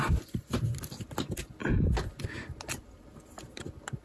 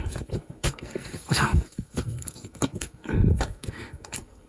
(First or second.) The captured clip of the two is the first